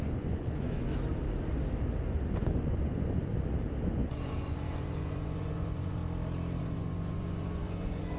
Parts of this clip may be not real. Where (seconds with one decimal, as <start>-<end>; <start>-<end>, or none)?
0.0-0.9; 2.1-3.2; 3.8-6.0; 6.6-8.2